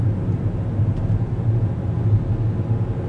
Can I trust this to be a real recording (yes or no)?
yes